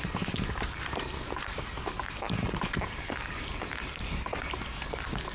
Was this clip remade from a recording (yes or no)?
no